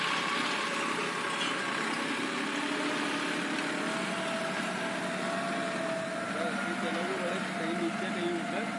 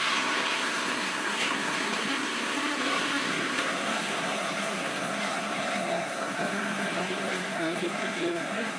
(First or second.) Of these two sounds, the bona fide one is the first